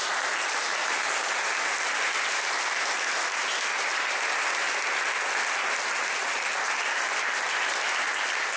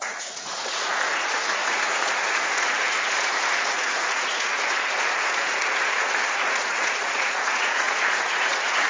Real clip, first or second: first